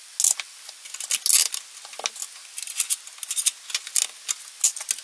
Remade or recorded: recorded